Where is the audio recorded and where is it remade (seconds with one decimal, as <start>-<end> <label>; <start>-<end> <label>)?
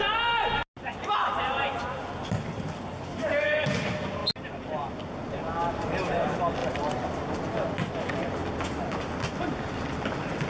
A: 0.0-10.5 recorded